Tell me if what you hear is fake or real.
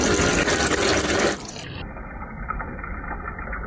real